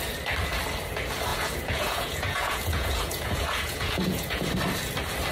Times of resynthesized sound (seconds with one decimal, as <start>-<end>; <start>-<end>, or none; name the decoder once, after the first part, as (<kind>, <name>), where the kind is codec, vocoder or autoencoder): 1.3-4.5 (vocoder, Vocos)